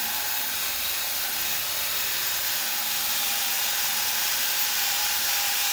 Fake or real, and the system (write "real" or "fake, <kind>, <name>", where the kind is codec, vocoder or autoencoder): fake, vocoder, BigVGAN v2